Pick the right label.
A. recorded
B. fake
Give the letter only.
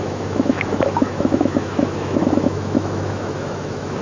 B